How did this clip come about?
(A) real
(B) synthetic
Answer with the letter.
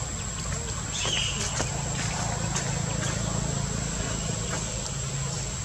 A